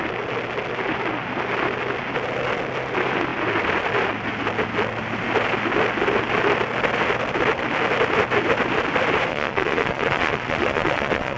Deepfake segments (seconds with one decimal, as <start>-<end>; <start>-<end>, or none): 9.3-11.4